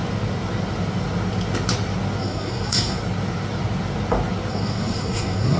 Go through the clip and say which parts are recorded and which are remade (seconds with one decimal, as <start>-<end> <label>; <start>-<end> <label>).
0.0-2.2 recorded; 2.2-3.0 remade; 3.0-4.5 recorded; 4.5-5.6 remade